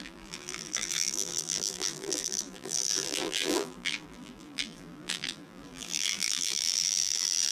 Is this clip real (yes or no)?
no